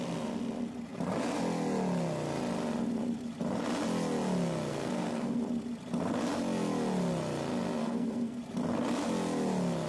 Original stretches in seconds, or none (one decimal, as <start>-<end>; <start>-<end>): 0.0-4.7; 5.4-7.8; 8.4-9.9